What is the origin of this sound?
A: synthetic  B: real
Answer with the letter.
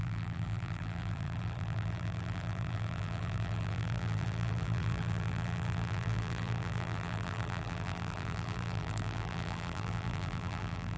A